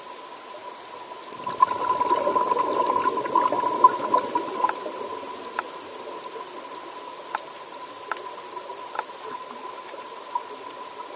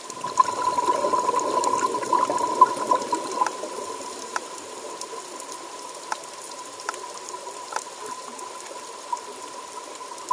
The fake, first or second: second